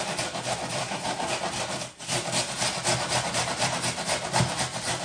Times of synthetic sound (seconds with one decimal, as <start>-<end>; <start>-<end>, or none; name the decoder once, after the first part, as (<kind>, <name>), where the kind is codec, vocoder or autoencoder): 0.8-1.3 (codec, SNAC)